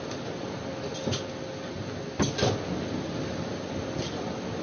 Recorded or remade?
recorded